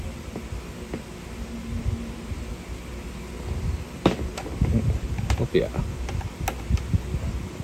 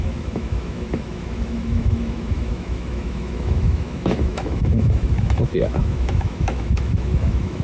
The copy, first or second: second